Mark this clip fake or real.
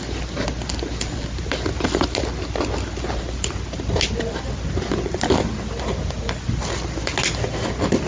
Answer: real